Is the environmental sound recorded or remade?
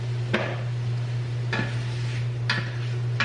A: recorded